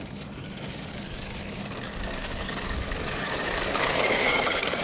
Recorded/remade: remade